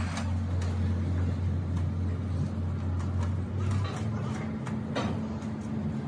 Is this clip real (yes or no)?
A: yes